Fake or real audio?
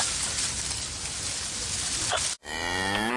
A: real